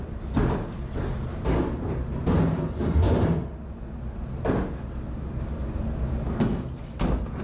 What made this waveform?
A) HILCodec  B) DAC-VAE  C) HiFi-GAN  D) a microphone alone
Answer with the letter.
D